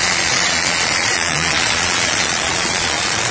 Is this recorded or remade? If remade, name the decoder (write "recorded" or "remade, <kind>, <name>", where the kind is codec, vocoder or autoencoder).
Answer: remade, vocoder, Vocos